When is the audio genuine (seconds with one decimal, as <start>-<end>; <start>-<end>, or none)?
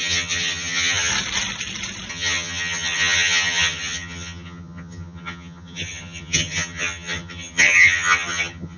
1.1-2.1